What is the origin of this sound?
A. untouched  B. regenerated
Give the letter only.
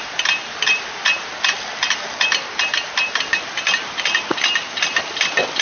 B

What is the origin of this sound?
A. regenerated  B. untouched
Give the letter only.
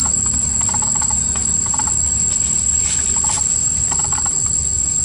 A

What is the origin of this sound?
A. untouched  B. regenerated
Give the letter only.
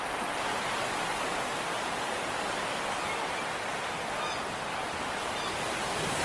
A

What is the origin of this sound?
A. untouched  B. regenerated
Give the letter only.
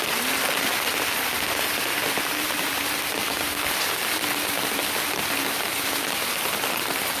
A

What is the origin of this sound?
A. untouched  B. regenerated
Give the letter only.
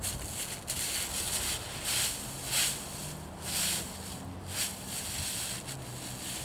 A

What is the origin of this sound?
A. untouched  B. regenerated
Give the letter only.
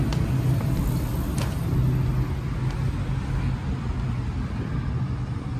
A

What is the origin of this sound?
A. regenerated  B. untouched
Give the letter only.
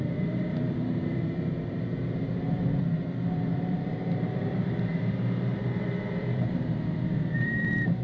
A